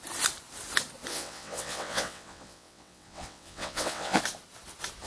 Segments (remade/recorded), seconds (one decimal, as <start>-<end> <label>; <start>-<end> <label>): 0.0-1.1 recorded; 1.1-4.2 remade; 4.2-5.1 recorded